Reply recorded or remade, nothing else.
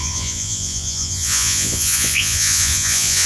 remade